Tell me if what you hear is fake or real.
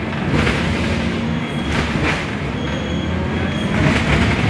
real